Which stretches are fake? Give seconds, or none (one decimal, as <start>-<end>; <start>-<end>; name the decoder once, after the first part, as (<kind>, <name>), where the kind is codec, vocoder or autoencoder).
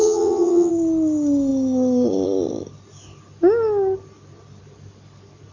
0.0-0.7 (vocoder, HiFi-GAN)